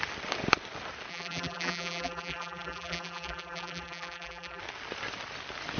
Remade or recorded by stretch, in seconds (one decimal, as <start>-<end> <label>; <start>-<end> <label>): 0.0-1.1 recorded; 1.1-4.6 remade; 4.6-5.8 recorded